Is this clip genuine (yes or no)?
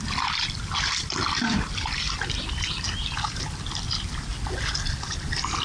yes